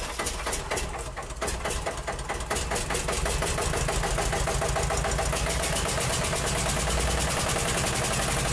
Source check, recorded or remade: recorded